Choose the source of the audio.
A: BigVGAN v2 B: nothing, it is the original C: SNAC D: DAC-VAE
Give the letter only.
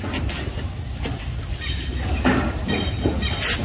B